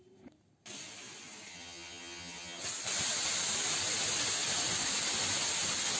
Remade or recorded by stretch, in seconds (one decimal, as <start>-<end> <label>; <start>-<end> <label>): 0.0-1.5 recorded; 1.5-2.6 remade; 2.6-6.0 recorded